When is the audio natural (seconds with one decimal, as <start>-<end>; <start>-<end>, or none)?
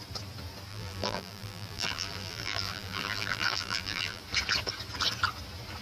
0.0-0.7; 4.2-5.8